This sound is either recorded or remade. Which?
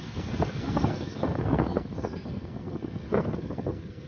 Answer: remade